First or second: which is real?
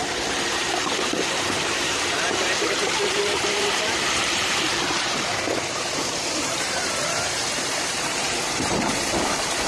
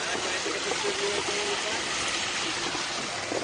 second